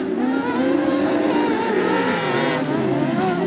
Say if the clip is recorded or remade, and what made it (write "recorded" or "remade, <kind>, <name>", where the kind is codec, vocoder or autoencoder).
recorded